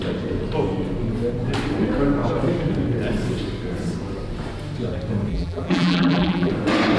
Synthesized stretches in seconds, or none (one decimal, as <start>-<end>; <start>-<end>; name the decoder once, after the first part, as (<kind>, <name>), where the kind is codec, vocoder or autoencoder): 5.3-6.5 (vocoder, BigVGAN v2)